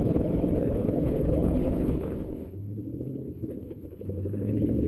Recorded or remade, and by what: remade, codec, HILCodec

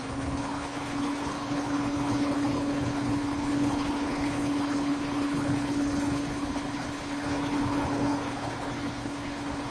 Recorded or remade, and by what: remade, codec, HILCodec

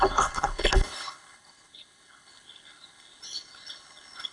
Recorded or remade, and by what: remade, codec, HILCodec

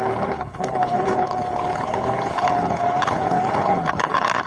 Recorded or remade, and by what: remade, codec, HILCodec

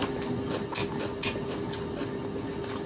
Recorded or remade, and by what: recorded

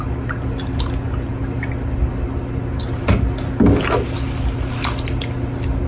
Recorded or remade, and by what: recorded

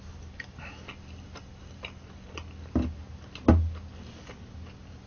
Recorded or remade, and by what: recorded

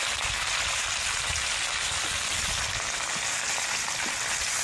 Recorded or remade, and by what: recorded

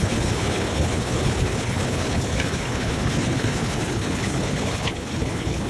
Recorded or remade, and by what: remade, codec, HILCodec